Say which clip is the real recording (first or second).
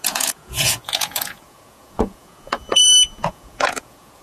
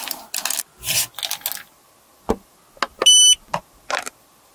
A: second